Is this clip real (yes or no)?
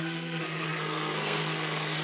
no